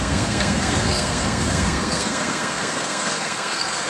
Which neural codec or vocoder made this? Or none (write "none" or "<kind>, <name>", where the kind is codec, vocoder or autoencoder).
codec, SNAC